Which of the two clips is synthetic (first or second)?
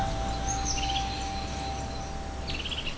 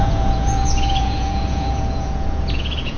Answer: second